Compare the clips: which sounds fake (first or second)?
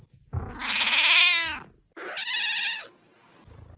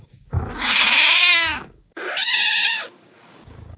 second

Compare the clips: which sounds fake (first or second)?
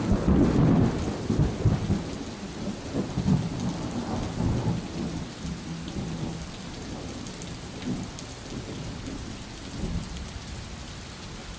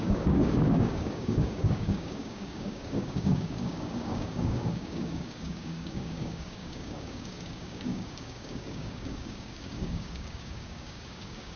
second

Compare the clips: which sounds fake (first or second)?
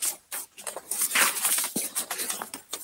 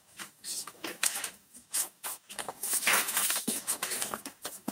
second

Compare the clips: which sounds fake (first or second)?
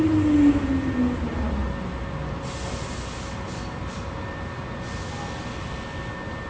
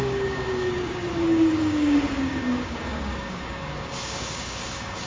second